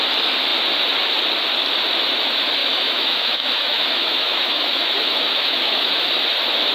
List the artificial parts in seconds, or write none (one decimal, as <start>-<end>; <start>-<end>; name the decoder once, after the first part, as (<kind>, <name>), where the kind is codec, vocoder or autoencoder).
2.6-6.0 (autoencoder, DAC-VAE)